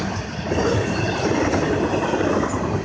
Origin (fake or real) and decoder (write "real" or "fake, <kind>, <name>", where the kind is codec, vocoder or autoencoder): real